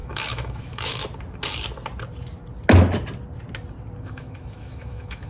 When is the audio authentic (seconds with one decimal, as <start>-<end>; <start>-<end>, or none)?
1.0-4.0